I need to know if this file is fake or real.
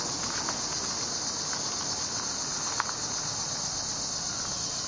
real